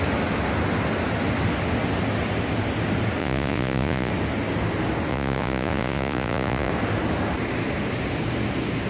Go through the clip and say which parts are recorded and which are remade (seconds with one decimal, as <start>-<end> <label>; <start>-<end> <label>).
0.0-3.2 recorded; 3.2-4.1 remade; 4.1-5.1 recorded; 5.1-6.7 remade; 6.7-8.9 recorded